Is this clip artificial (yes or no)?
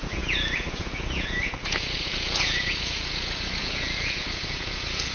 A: yes